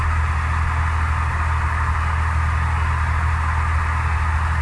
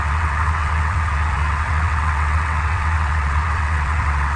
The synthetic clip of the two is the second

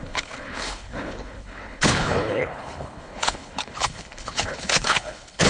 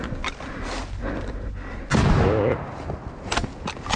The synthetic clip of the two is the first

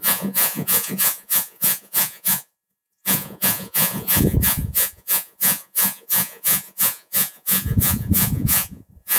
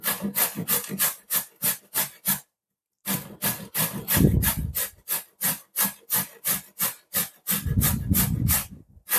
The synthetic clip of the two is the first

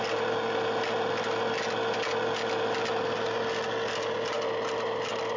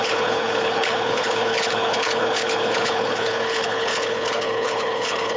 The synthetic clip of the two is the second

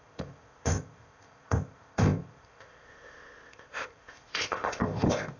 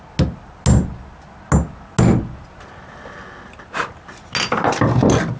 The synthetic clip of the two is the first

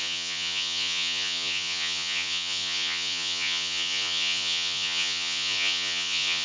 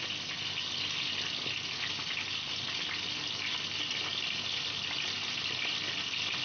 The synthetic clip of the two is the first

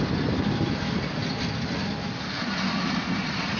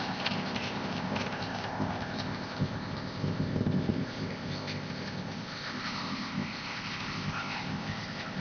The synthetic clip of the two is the second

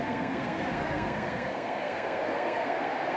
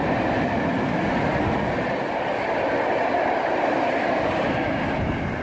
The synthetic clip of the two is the first